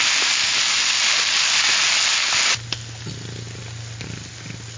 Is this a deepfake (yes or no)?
no